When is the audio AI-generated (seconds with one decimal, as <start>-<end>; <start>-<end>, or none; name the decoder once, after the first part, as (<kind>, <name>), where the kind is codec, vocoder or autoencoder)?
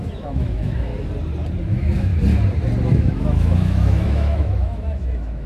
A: 0.0-0.9 (autoencoder, DAC-VAE); 1.6-2.1; 2.9-5.5